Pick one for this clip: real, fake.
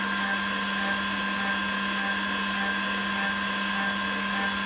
real